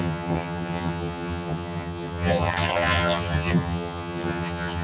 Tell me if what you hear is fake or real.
fake